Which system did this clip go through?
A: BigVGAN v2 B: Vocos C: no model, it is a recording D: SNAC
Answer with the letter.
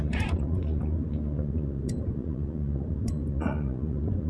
B